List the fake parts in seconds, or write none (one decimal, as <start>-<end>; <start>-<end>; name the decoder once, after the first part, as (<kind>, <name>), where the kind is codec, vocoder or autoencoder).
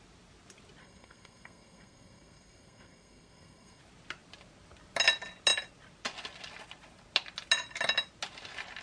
0.8-3.8 (codec, SNAC)